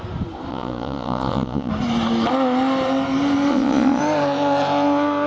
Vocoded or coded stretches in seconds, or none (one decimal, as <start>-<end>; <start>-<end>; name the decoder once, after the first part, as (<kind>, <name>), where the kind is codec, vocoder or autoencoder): 0.5-1.7 (vocoder, Vocos); 3.5-4.0